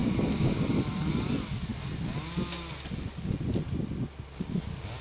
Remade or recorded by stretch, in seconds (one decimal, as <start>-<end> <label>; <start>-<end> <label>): 0.0-0.8 remade; 0.8-5.0 recorded